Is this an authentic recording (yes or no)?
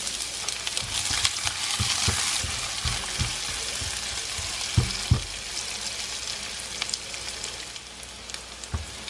yes